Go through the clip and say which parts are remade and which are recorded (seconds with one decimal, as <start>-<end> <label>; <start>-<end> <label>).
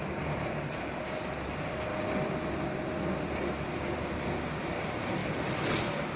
0.0-1.0 remade; 1.0-1.9 recorded; 1.9-4.8 remade; 4.8-6.2 recorded